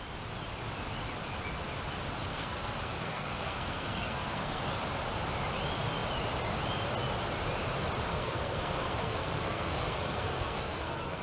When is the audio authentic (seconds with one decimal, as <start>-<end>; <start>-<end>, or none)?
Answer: 0.0-2.3; 4.6-8.1